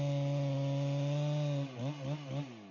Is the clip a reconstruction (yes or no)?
no